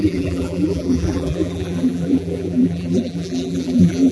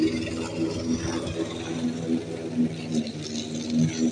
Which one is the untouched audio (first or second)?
second